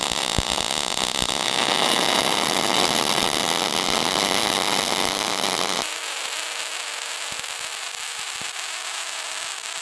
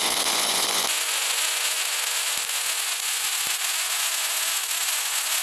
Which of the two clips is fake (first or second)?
second